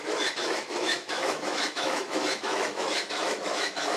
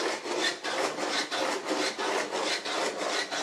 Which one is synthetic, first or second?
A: first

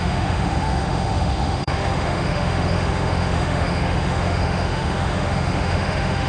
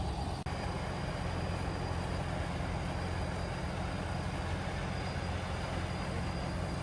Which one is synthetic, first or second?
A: first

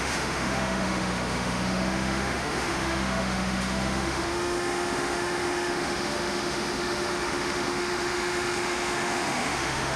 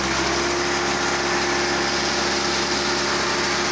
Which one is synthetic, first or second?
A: first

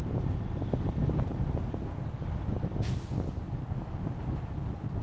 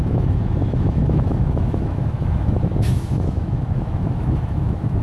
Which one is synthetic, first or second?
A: second